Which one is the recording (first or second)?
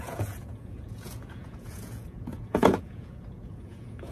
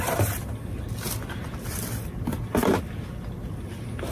second